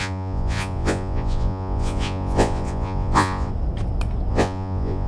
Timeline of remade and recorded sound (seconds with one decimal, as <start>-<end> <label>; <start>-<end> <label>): 0.0-3.5 remade; 3.5-4.3 recorded; 4.3-5.1 remade